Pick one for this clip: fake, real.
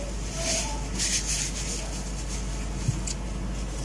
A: real